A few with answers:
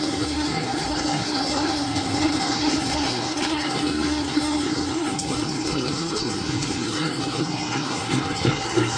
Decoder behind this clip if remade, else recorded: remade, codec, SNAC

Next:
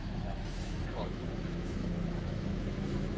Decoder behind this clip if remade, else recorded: remade, autoencoder, DAC-VAE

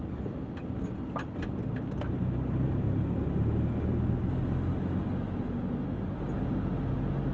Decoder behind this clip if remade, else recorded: recorded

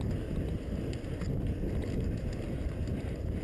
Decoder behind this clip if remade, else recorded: recorded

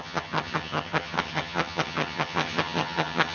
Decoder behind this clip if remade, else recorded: remade, vocoder, HiFi-GAN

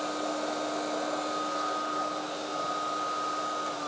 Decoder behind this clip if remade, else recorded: recorded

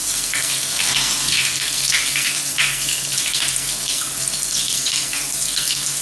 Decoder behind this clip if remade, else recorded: remade, codec, SNAC